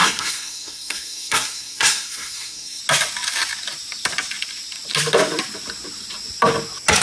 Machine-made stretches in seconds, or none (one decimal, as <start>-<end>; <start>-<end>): 0.0-2.8